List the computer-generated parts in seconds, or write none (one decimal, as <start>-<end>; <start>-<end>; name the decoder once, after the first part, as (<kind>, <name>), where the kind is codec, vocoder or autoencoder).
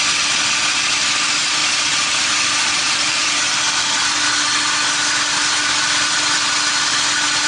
1.6-3.6 (vocoder, BigVGAN v2)